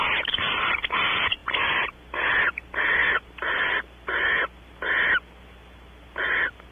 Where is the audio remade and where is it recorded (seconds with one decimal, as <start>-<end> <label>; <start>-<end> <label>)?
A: 0.0-6.7 recorded